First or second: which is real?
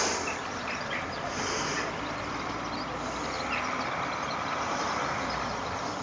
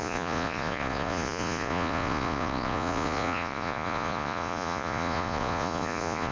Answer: first